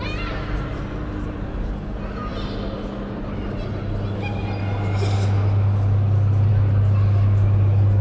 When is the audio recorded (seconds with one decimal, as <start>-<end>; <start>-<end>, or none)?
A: 0.0-8.0